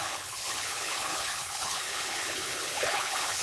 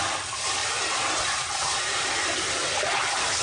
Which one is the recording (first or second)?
second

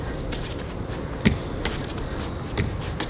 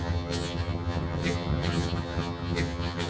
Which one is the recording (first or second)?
first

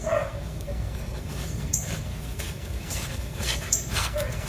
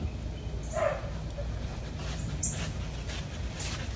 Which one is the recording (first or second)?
second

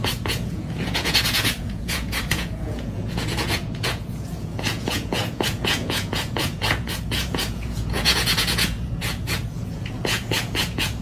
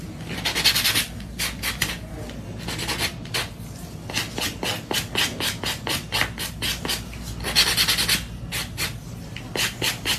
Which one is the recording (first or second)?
second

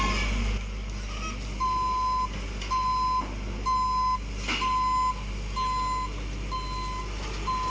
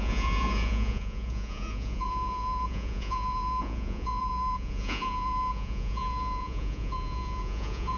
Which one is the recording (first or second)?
first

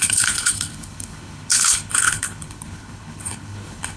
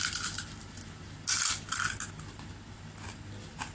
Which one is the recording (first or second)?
second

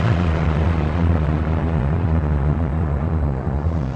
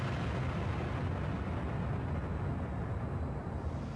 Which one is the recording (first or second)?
second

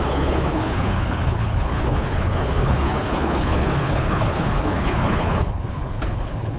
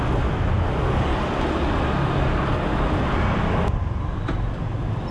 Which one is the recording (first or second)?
second